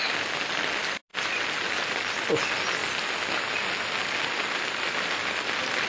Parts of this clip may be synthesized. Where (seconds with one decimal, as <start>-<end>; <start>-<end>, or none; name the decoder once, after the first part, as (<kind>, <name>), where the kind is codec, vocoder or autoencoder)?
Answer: none